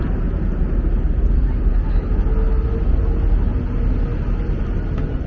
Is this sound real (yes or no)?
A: yes